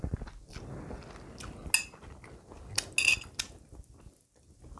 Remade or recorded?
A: recorded